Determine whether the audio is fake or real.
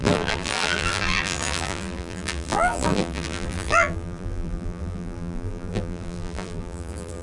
fake